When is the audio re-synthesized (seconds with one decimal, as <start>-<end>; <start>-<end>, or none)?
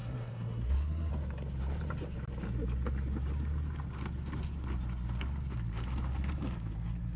0.0-1.1